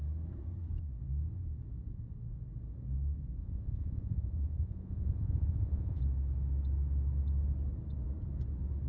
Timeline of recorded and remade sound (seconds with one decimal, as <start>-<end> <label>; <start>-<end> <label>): 0.0-3.4 recorded; 3.4-6.0 remade; 6.0-8.9 recorded